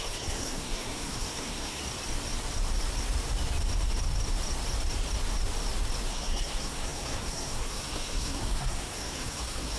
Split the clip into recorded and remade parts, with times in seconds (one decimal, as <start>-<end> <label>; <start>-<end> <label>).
0.0-1.8 remade; 1.8-6.1 recorded; 6.1-9.8 remade